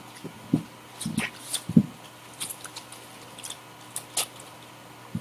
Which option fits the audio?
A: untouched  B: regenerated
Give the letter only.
A